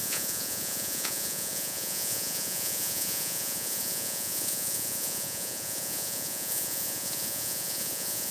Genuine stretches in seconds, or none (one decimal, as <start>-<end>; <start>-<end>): none